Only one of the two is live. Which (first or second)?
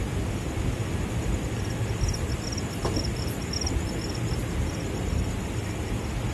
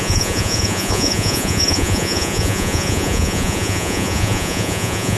first